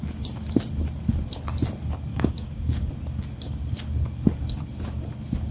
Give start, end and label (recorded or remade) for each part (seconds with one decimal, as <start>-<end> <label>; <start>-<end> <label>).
0.0-2.1 recorded; 2.1-2.9 remade; 2.9-5.5 recorded